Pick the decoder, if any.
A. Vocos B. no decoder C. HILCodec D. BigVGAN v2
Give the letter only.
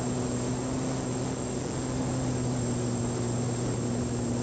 B